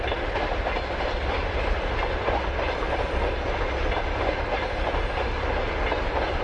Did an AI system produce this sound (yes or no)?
no